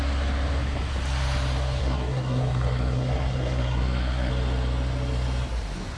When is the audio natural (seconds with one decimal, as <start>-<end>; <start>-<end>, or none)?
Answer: 0.0-1.8; 4.3-6.0